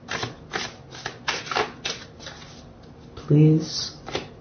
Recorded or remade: recorded